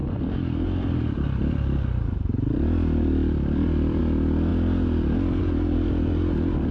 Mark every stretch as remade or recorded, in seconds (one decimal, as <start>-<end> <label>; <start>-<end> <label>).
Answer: 0.0-4.0 remade; 4.0-6.7 recorded